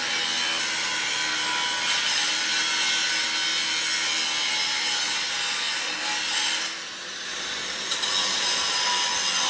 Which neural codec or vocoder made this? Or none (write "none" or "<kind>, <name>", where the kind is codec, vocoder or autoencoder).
none